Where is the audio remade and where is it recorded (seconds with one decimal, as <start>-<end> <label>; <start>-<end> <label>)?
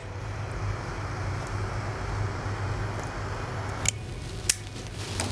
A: 0.0-5.3 recorded